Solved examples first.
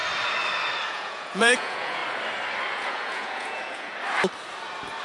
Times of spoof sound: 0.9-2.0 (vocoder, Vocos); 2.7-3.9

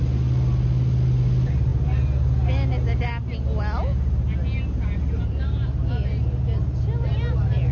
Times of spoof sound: none

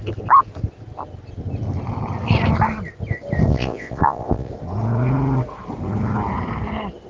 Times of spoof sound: 3.5-4.5 (vocoder, Vocos)

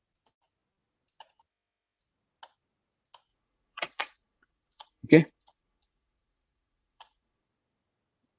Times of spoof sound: 3.3-7.4 (vocoder, Vocos)